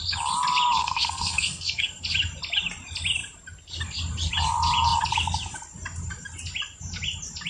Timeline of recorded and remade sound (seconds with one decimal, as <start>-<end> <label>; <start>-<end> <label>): 0.0-0.8 recorded; 0.8-2.0 remade; 2.0-7.5 recorded